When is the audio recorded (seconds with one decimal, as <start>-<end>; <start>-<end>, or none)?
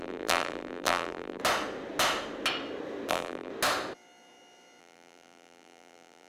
1.4-3.1; 3.5-4.8